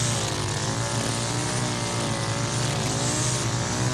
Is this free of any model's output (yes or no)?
yes